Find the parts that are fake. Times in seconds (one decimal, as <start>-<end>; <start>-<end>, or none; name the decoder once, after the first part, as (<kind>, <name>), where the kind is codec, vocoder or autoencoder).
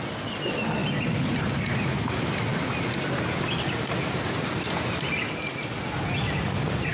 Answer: none